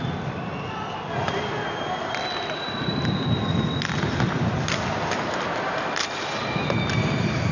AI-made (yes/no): no